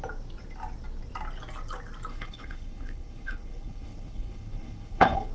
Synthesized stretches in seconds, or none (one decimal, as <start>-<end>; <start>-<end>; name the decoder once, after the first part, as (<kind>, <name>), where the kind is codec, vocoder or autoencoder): 2.1-5.3 (codec, HILCodec)